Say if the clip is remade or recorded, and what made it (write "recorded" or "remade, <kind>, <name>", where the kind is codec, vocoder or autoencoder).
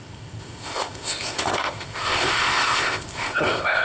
remade, codec, ZipCodec